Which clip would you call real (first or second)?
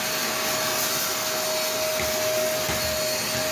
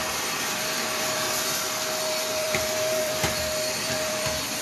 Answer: first